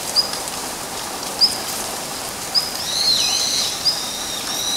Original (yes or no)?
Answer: no